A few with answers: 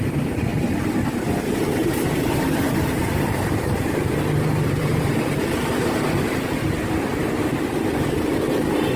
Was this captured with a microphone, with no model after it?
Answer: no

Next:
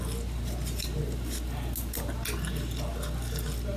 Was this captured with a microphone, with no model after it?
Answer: yes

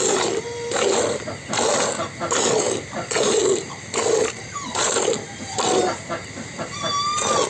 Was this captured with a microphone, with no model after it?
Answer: yes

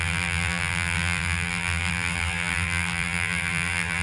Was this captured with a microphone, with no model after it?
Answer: no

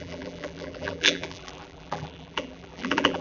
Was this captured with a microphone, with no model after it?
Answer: no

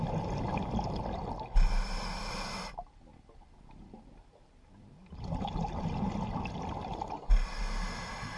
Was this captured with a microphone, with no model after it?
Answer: yes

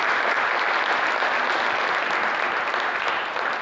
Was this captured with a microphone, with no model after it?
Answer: yes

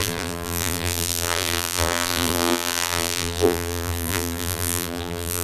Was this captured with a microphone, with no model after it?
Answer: no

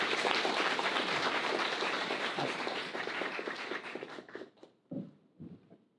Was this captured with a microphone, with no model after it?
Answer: no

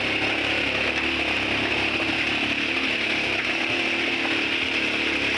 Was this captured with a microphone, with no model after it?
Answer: yes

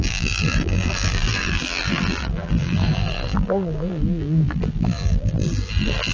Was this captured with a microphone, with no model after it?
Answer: no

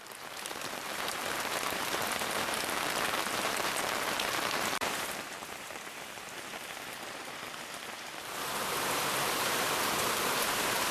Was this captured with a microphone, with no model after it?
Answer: no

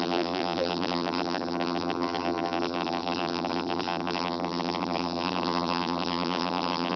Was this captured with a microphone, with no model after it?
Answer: no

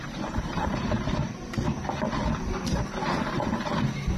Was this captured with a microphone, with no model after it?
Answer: no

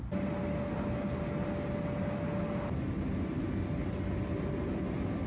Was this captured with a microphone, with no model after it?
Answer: yes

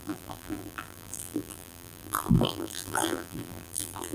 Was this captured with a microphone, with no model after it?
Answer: no